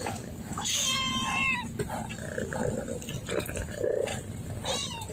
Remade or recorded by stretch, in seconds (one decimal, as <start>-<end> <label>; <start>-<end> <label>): 0.0-1.1 remade; 1.1-3.6 recorded; 3.6-4.1 remade; 4.1-5.1 recorded